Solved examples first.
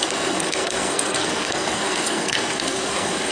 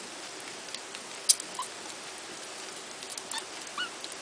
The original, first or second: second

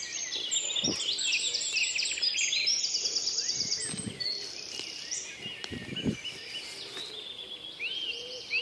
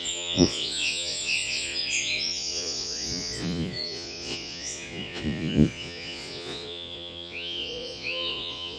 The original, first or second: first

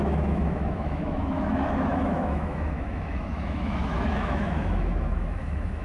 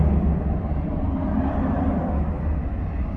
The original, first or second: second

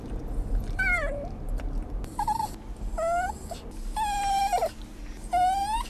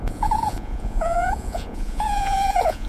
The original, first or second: first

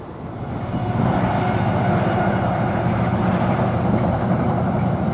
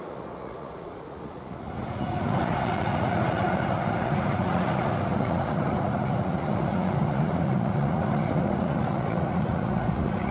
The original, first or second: first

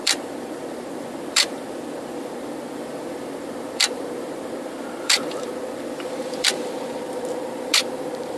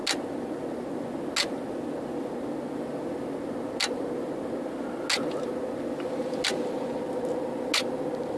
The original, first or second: second